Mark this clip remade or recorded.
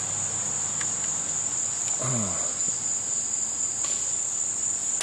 recorded